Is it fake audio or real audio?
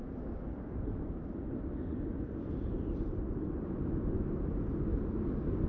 real